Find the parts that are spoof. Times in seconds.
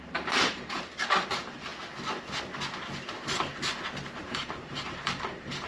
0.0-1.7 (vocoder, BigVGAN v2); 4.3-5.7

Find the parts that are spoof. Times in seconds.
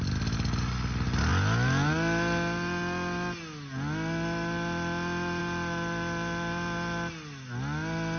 none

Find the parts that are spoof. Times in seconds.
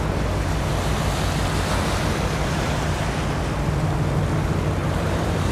4.8-5.5 (vocoder, BigVGAN v2)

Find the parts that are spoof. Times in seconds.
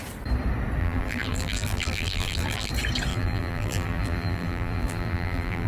0.8-2.7 (vocoder, BigVGAN v2); 3.1-5.7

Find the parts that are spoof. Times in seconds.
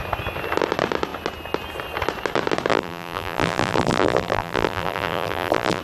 2.7-5.8 (vocoder, BigVGAN v2)